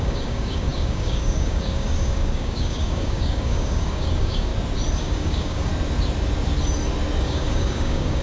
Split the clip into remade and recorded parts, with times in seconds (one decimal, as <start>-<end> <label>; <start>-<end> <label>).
0.0-4.5 remade; 4.5-5.0 recorded; 5.0-5.7 remade; 5.7-7.2 recorded; 7.2-8.2 remade